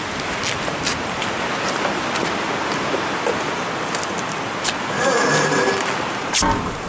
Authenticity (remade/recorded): recorded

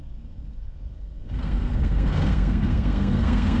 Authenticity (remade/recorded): remade